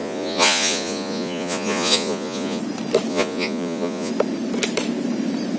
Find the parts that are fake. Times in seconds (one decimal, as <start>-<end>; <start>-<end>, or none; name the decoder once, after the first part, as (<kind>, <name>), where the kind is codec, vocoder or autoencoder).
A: 0.0-2.6 (vocoder, Vocos); 3.1-4.1